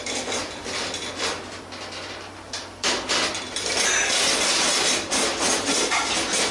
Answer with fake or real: real